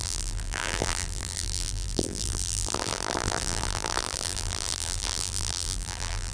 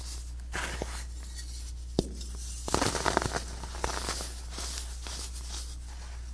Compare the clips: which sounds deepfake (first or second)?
first